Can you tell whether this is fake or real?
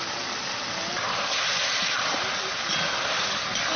real